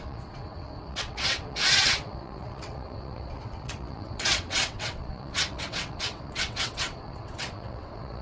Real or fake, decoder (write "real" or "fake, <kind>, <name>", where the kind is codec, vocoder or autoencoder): fake, vocoder, WaveNeXt